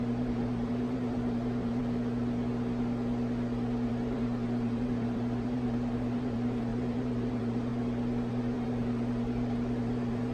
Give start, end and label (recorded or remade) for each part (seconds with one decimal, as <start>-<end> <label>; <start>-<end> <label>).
0.0-1.8 remade; 1.8-3.9 recorded; 3.9-7.7 remade; 7.7-8.3 recorded; 8.3-10.3 remade